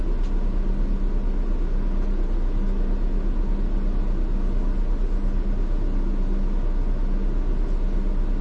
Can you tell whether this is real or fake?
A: real